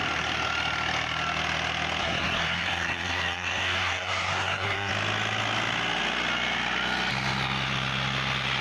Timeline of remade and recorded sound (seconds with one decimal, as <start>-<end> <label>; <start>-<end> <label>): 0.0-2.0 recorded; 2.0-4.9 remade; 4.9-8.6 recorded